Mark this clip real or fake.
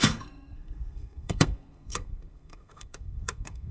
fake